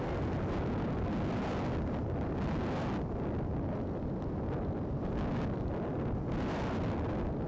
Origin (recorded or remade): recorded